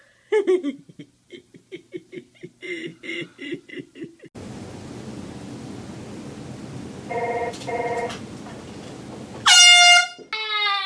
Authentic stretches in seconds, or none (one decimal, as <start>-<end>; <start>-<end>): 0.0-10.9